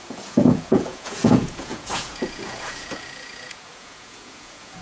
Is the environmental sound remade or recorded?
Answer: remade